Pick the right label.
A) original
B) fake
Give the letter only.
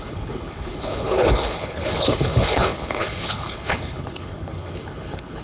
B